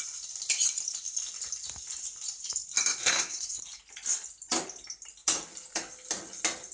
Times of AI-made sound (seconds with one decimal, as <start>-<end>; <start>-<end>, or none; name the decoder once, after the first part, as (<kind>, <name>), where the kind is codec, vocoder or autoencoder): 3.0-3.6 (codec, SNAC)